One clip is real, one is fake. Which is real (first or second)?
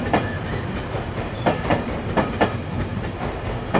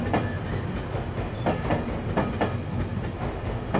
second